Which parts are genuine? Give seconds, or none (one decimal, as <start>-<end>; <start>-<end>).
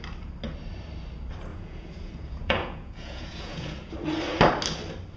0.0-1.5; 3.9-5.2